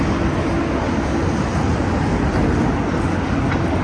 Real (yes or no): yes